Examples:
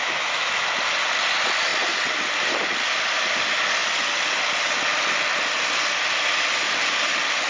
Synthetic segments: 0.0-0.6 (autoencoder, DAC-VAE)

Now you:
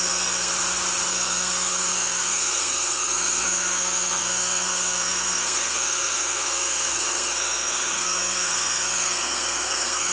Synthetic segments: 0.0-0.5 (codec, SNAC); 1.1-10.1

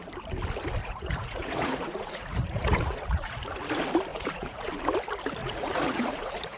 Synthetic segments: 0.8-3.4 (vocoder, Vocos); 4.1-4.7; 5.4-6.6

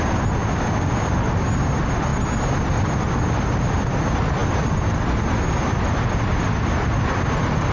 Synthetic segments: none

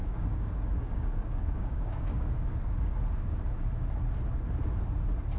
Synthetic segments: 0.0-3.0 (codec, DAC)

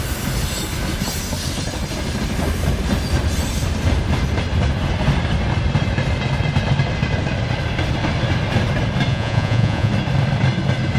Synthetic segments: 9.1-9.9 (vocoder, Vocos)